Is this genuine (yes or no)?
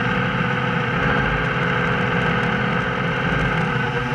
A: yes